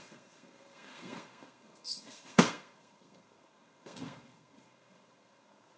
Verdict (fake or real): fake